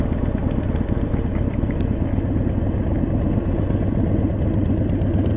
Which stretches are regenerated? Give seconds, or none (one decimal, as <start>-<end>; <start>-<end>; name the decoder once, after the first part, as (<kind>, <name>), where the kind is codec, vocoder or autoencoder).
none